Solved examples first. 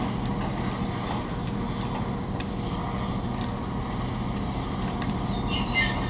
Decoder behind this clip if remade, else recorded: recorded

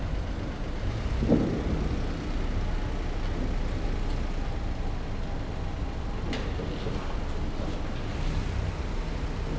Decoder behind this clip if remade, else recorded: recorded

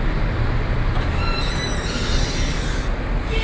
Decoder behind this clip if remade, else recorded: recorded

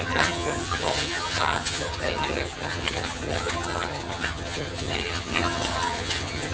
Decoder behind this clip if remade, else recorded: remade, vocoder, HiFi-GAN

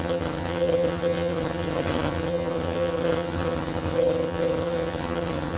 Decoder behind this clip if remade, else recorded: remade, vocoder, HiFi-GAN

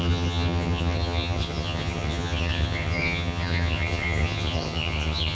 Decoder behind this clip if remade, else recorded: remade, vocoder, HiFi-GAN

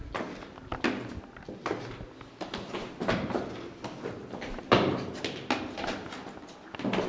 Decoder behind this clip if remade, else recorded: recorded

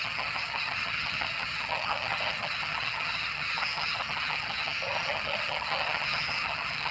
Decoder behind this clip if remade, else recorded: remade, vocoder, HiFi-GAN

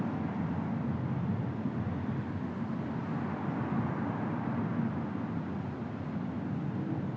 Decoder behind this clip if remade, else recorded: recorded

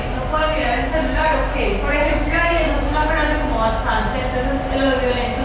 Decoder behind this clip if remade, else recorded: recorded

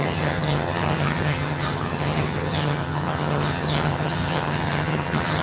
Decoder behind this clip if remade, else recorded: remade, vocoder, HiFi-GAN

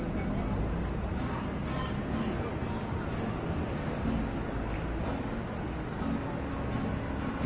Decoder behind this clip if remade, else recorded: recorded